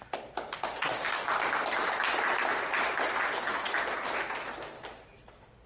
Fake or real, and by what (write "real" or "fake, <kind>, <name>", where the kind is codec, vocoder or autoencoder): real